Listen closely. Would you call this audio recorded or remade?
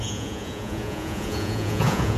remade